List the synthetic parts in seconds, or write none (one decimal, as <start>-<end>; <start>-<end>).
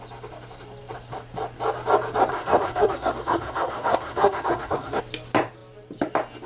2.3-5.0